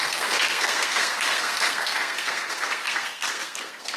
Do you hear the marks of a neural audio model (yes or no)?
yes